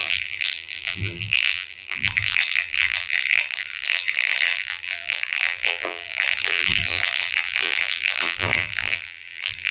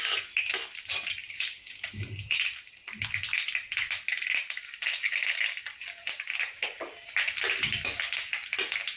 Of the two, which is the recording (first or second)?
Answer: second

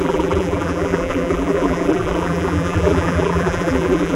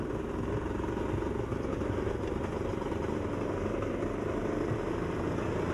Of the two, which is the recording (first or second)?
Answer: second